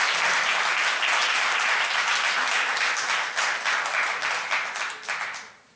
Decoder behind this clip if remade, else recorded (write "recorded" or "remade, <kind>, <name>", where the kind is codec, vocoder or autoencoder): recorded